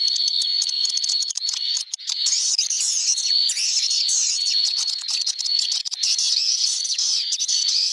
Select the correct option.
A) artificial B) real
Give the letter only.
A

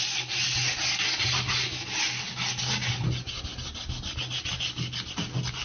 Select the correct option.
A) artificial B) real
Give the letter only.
B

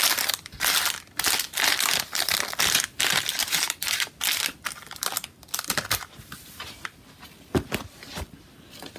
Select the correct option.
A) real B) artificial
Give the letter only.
A